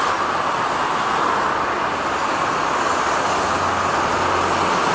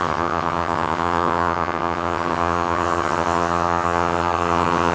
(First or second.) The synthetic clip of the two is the second